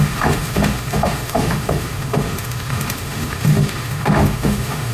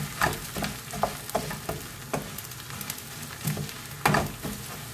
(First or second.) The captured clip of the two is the second